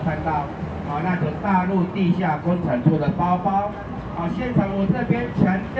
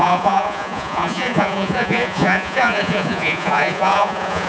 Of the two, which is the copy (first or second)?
second